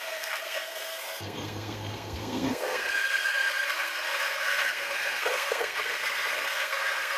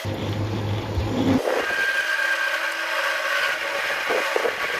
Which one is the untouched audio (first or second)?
second